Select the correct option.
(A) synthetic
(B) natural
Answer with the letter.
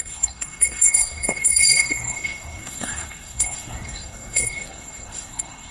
A